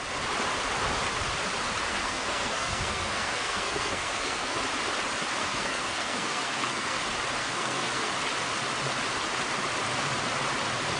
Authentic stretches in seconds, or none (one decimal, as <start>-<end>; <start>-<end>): 0.0-1.9; 4.6-5.4; 7.0-7.4; 8.1-11.0